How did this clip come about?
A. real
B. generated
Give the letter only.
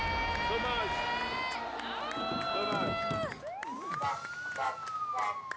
A